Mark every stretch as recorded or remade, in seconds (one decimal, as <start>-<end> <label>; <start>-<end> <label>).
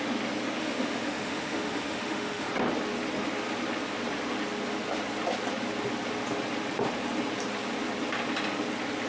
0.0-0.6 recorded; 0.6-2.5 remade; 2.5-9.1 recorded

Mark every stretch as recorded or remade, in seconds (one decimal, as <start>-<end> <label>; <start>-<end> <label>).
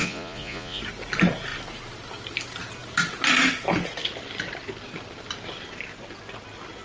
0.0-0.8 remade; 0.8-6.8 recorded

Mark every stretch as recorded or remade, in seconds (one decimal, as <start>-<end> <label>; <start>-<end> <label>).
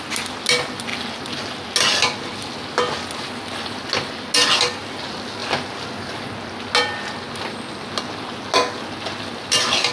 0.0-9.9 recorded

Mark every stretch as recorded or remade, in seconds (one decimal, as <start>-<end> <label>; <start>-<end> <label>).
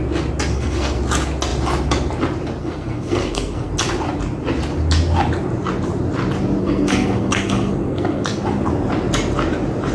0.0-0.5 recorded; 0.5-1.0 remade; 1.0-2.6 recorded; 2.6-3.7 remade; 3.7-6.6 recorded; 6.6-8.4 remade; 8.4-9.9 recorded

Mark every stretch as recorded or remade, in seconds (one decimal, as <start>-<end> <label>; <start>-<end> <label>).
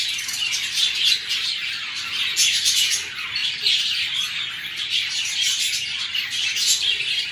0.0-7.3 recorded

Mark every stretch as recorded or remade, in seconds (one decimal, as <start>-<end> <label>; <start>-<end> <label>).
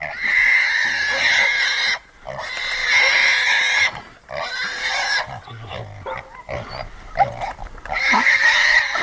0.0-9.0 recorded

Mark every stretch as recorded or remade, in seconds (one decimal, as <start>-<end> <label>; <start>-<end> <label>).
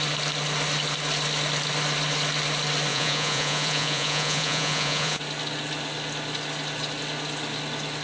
0.0-2.9 recorded; 2.9-5.2 remade; 5.2-8.0 recorded